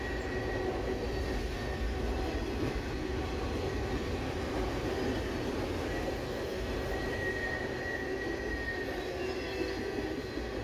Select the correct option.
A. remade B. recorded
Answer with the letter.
B